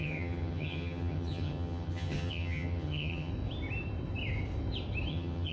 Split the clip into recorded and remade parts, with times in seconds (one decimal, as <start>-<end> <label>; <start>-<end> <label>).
0.0-3.3 remade; 3.3-5.1 recorded; 5.1-5.5 remade